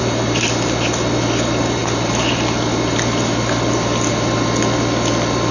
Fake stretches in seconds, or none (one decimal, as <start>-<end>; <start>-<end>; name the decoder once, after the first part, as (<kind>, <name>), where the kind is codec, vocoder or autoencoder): none